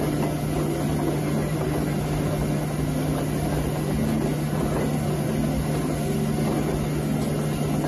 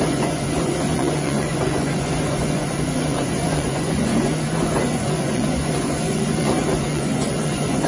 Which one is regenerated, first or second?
second